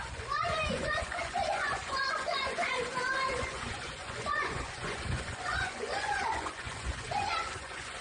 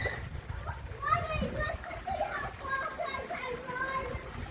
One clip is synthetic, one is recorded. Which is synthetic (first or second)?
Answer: first